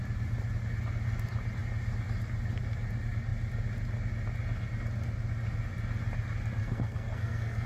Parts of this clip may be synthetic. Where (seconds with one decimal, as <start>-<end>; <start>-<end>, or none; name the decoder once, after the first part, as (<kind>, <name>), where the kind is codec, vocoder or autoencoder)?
6.6-7.7 (codec, SNAC)